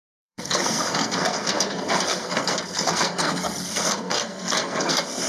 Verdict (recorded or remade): remade